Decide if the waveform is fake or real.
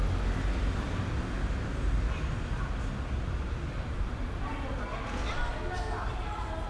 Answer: real